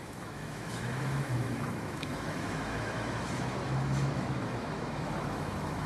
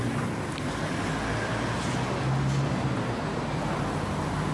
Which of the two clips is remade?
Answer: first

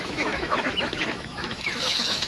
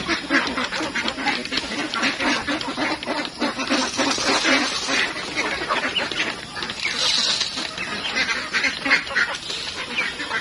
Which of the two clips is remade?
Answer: first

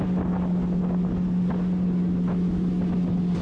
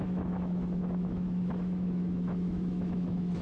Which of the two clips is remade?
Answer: second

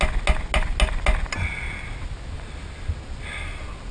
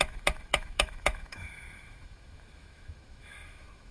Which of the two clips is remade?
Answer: second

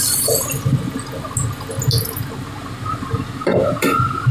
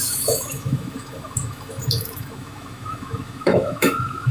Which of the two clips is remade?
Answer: second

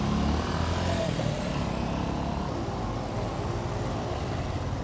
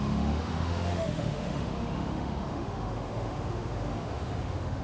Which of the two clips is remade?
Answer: second